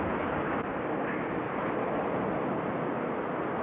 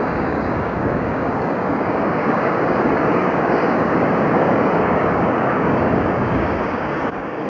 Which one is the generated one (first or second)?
second